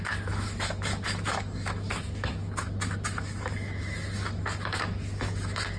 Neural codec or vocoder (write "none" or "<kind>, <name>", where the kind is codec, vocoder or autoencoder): autoencoder, DAC-VAE